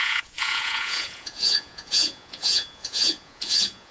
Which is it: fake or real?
fake